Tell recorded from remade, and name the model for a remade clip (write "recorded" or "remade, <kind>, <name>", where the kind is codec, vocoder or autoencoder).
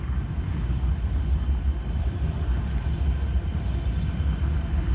recorded